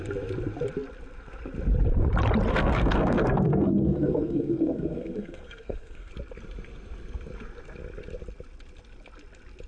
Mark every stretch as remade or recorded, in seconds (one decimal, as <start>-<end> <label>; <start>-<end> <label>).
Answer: 0.0-2.5 recorded; 2.5-6.1 remade; 6.1-9.7 recorded